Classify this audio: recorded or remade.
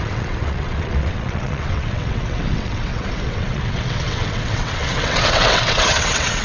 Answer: remade